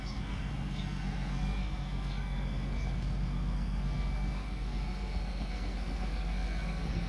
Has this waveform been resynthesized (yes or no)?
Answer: yes